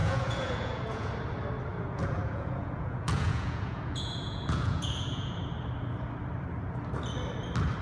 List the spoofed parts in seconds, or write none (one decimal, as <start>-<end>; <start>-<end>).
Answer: 0.0-1.1; 1.7-5.4